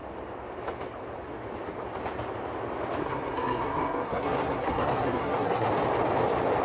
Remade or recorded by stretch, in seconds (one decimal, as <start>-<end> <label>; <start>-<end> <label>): 0.0-3.0 recorded; 3.0-5.7 remade; 5.7-6.6 recorded